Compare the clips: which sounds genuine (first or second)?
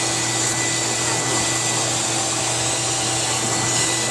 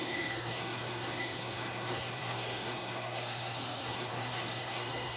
first